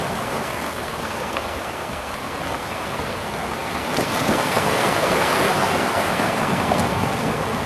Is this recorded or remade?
remade